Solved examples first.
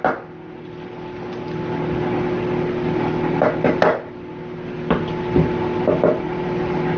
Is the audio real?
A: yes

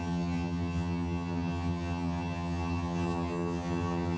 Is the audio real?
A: no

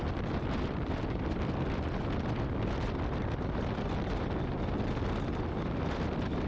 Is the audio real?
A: yes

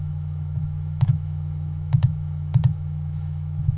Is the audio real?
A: no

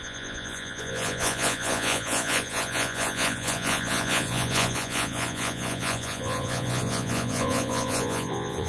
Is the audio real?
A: no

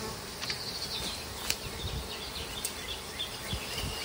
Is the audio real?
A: yes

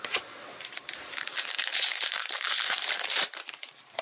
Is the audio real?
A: no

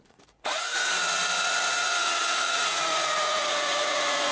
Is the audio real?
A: no